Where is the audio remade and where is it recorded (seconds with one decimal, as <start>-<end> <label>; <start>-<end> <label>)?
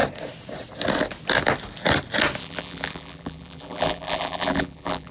0.0-2.4 recorded; 2.4-5.1 remade